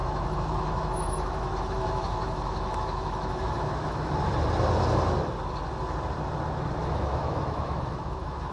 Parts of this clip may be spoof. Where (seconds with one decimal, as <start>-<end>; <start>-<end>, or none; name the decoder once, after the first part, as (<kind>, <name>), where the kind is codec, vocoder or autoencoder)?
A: 0.0-4.1 (autoencoder, DAC-VAE); 6.8-8.5

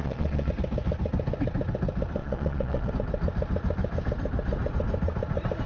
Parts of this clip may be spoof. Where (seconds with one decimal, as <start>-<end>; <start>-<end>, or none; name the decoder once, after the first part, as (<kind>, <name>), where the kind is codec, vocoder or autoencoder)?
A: 0.0-0.5 (vocoder, Vocos); 2.2-2.9

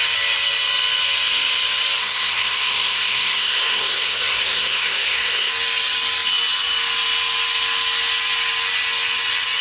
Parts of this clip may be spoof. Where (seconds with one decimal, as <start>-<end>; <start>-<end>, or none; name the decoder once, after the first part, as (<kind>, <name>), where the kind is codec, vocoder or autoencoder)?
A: 2.0-5.5 (codec, SNAC)

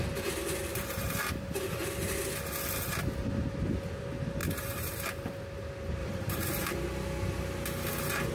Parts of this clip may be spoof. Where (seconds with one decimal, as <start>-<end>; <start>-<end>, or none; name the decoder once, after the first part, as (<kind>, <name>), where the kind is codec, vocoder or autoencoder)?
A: 0.7-1.8 (vocoder, BigVGAN v2); 4.4-5.0; 6.0-6.7